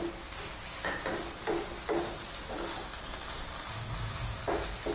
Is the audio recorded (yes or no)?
yes